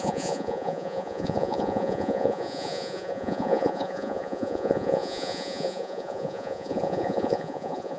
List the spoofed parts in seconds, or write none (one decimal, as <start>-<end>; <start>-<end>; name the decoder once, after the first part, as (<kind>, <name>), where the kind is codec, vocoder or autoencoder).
0.0-8.0 (vocoder, Vocos)